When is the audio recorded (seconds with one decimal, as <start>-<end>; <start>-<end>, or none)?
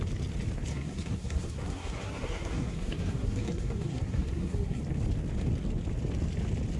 0.0-0.7; 4.8-6.8